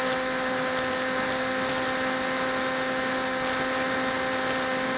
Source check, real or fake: real